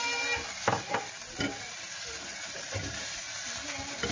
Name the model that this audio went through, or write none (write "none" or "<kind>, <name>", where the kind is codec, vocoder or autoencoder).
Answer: none